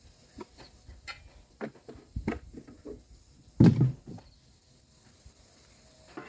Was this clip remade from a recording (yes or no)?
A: no